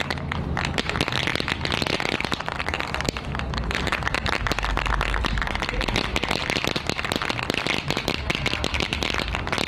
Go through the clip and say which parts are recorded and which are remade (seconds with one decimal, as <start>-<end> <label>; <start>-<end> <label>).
0.0-5.2 recorded; 5.2-5.9 remade; 5.9-9.7 recorded